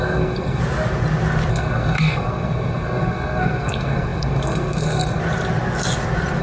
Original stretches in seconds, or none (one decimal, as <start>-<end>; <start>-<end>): 0.6-1.5; 5.2-6.4